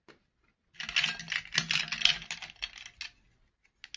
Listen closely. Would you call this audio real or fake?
real